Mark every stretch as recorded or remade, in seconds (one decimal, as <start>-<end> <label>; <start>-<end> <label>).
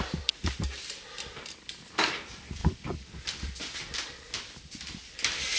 0.0-5.6 recorded